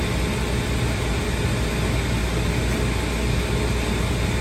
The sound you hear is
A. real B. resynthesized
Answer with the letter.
A